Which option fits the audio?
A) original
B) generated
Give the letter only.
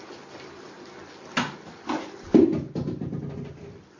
A